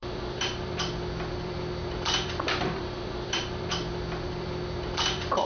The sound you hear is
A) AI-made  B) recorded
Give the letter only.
A